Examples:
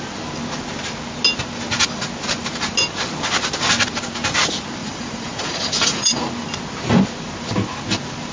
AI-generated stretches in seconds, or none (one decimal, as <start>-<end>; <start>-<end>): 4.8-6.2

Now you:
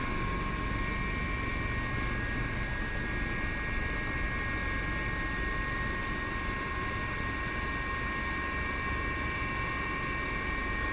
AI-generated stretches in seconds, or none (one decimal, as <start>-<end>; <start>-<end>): none

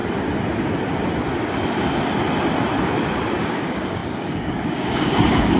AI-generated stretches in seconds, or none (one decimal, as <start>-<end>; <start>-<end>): 3.4-5.6

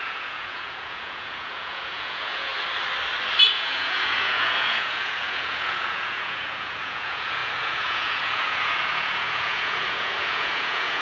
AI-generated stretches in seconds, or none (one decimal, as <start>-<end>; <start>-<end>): 0.0-2.5; 3.5-11.0